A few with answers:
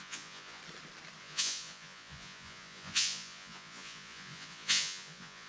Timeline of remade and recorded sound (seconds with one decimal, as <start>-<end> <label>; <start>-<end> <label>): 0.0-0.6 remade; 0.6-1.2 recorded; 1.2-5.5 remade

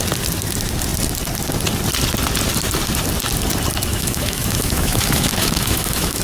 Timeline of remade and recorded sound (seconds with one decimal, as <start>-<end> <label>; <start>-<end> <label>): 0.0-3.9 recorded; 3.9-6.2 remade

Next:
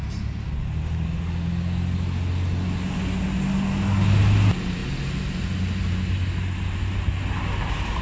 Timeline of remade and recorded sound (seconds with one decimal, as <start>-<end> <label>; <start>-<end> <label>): 0.0-8.0 recorded

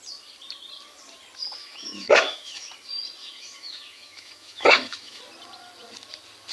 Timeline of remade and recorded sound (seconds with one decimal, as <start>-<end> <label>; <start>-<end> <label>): 0.0-1.6 recorded; 1.6-2.7 remade; 2.7-3.2 recorded; 3.2-5.2 remade; 5.2-6.5 recorded

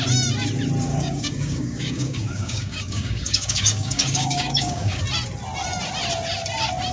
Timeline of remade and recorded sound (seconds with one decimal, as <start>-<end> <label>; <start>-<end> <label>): 0.0-0.9 recorded; 0.9-5.0 remade; 5.0-6.9 recorded